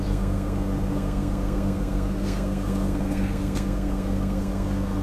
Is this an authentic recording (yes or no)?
no